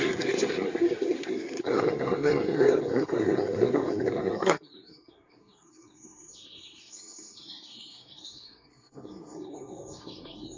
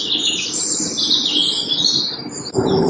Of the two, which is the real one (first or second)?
second